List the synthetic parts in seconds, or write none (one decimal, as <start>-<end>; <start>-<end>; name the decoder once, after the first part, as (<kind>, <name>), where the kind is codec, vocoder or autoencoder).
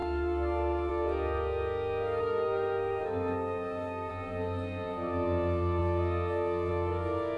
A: 0.0-0.9 (codec, SNAC); 2.2-4.1